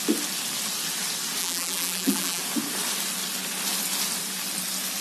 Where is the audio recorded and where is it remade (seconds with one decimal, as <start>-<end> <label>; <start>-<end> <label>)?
0.0-1.4 recorded; 1.4-2.4 remade; 2.4-5.0 recorded